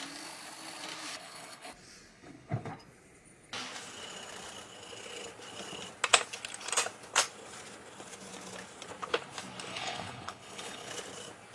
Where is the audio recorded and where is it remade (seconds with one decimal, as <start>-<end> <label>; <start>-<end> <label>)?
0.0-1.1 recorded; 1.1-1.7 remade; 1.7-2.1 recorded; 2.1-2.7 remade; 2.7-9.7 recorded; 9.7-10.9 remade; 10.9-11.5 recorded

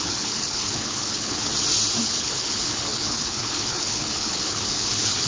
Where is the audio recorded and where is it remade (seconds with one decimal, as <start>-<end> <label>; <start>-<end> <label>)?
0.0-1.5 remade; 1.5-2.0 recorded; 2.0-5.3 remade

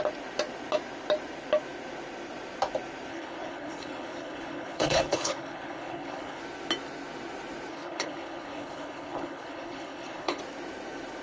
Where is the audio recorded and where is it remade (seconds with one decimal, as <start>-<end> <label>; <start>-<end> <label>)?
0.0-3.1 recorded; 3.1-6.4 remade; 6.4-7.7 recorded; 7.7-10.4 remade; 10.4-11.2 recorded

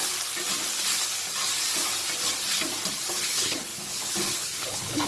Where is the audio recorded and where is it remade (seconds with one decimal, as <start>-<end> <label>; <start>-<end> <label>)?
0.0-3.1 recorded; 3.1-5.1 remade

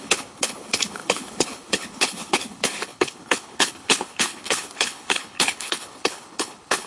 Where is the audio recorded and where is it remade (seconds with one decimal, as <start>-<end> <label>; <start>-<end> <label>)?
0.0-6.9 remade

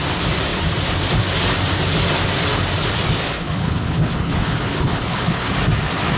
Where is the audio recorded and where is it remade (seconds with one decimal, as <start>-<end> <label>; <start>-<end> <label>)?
0.0-3.2 recorded; 3.2-5.5 remade; 5.5-6.2 recorded

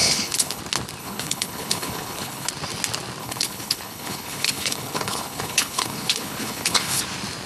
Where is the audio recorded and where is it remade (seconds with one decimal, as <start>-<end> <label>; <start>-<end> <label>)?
0.0-0.6 remade; 0.6-1.0 recorded; 1.0-2.5 remade; 2.5-3.2 recorded; 3.2-7.0 remade; 7.0-7.5 recorded